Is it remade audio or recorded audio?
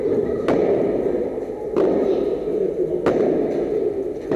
recorded